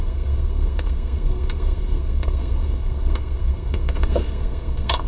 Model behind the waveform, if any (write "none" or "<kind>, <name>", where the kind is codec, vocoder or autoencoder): codec, SNAC